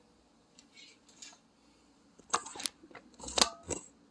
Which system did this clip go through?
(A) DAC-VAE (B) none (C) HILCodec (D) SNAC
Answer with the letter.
B